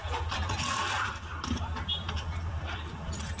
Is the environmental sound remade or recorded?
remade